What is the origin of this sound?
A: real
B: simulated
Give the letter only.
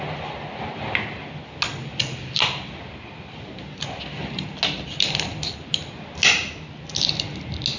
A